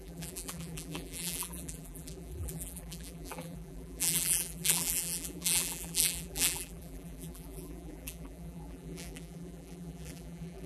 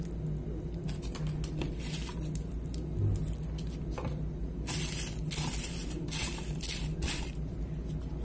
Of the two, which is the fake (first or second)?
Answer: first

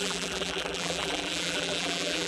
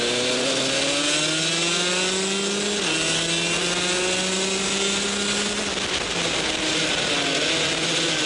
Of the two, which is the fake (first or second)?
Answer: first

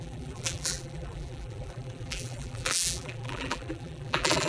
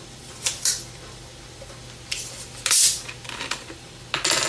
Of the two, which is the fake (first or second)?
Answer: first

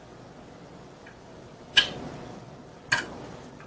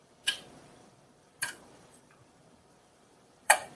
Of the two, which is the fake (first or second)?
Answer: second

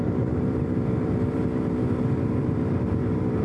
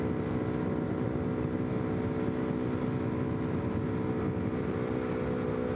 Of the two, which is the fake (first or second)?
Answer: first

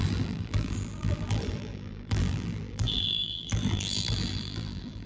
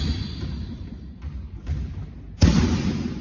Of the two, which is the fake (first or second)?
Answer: first